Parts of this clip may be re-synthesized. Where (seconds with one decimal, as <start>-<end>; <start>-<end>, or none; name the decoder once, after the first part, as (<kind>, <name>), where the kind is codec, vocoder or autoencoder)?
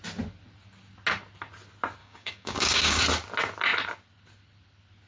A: 2.0-3.0 (codec, DAC)